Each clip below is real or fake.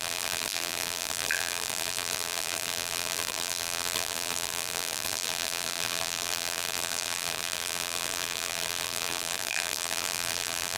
fake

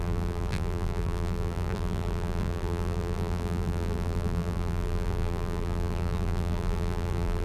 fake